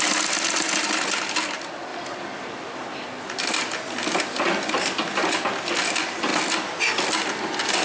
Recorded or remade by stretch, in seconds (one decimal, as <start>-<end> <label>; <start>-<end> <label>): 0.0-1.9 recorded; 1.9-4.2 remade; 4.2-7.8 recorded